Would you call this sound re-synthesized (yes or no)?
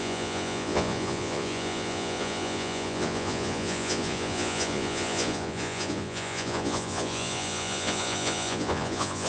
yes